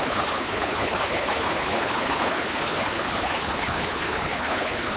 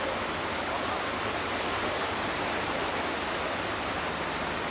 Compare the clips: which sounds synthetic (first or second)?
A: first